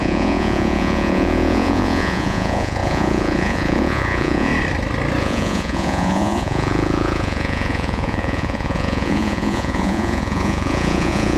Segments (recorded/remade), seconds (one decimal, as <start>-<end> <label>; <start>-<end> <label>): 0.0-4.5 remade; 4.5-5.2 recorded; 5.2-11.4 remade